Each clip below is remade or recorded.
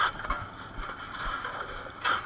recorded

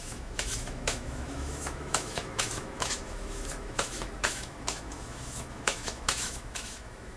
remade